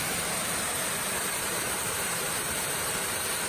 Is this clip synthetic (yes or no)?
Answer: yes